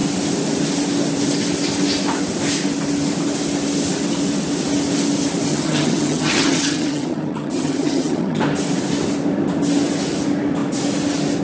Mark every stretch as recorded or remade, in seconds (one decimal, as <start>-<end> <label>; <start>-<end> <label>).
0.0-5.5 recorded; 5.5-8.4 remade; 8.4-11.4 recorded